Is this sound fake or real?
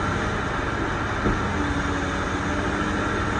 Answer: real